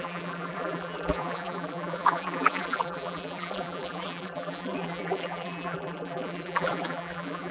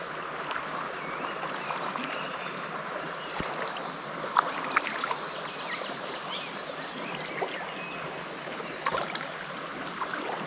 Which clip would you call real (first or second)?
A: second